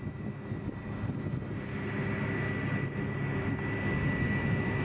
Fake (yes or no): no